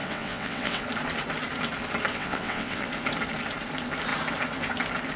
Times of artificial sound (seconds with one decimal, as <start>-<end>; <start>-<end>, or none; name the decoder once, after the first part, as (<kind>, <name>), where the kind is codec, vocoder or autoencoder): 0.0-0.8 (vocoder, WaveNeXt); 2.1-2.9